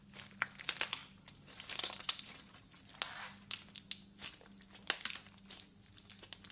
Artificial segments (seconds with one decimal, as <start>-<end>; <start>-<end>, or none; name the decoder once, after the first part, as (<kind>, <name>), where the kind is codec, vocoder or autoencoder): none

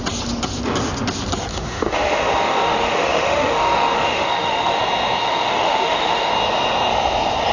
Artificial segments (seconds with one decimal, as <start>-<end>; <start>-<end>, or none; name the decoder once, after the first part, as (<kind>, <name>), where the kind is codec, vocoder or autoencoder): 1.5-4.8 (autoencoder, DAC-VAE); 5.2-6.3